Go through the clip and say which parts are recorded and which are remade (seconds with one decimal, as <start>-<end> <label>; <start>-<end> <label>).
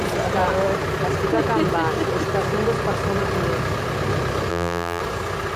0.0-4.5 recorded; 4.5-5.0 remade; 5.0-5.6 recorded